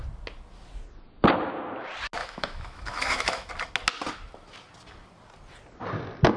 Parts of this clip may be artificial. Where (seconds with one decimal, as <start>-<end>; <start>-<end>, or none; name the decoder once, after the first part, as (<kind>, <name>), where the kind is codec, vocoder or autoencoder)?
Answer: 2.2-3.5 (autoencoder, DAC-VAE)